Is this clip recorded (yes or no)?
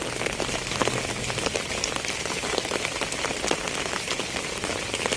yes